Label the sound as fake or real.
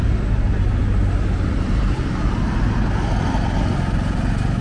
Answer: real